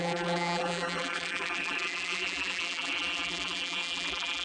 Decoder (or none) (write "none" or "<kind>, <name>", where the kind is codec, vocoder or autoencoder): vocoder, BigVGAN v2